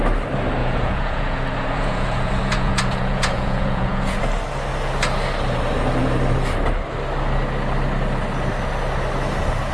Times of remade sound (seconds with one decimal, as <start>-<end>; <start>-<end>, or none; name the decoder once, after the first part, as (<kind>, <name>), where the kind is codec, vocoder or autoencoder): 0.6-4.2 (vocoder, Vocos)